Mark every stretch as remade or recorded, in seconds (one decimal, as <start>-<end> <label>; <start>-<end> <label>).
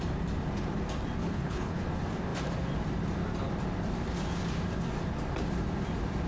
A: 0.0-1.2 recorded; 1.2-1.8 remade; 1.8-6.3 recorded